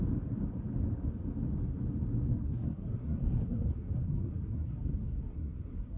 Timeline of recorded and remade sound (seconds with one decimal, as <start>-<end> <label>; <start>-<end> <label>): 0.0-2.3 recorded; 2.3-6.0 remade